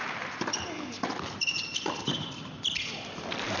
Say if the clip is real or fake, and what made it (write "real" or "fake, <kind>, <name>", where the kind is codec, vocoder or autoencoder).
fake, vocoder, BigVGAN v2